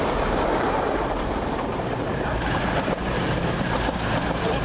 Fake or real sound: fake